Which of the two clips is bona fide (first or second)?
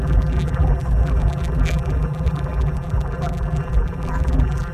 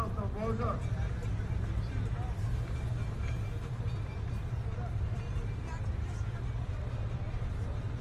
second